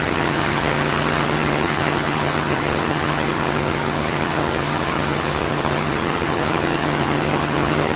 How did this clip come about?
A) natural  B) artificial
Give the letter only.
B